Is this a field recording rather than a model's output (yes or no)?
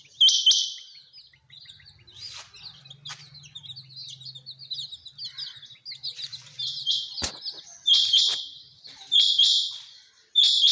yes